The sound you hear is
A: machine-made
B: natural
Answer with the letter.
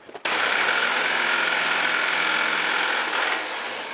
B